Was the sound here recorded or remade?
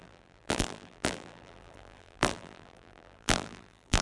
remade